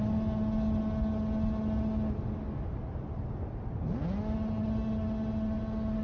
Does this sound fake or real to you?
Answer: real